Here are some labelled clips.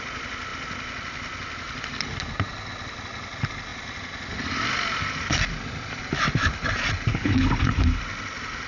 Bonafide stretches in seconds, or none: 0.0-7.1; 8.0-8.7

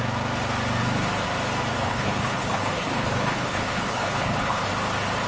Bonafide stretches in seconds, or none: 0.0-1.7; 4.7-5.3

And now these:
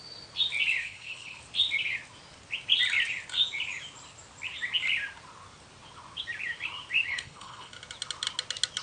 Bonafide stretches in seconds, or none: 0.0-0.8; 1.4-7.1; 7.7-8.8

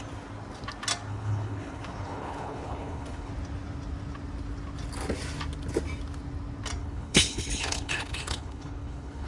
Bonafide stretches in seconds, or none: 0.0-1.1; 3.3-6.8

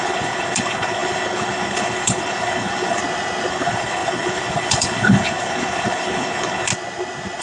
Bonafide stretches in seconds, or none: 3.0-3.5; 6.7-7.4

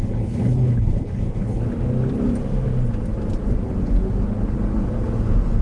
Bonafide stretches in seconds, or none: 1.6-5.6

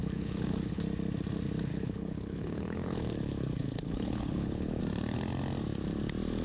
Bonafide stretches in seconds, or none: 0.8-1.7; 4.8-6.4

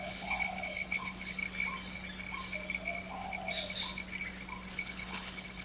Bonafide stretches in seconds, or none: 1.4-4.8